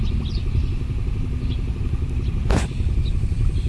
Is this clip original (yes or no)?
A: no